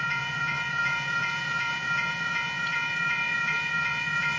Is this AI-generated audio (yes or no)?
yes